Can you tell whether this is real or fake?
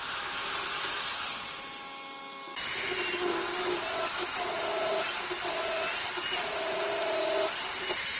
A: real